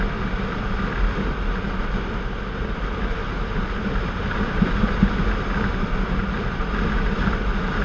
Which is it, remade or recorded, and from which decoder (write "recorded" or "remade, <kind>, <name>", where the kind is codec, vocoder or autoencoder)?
recorded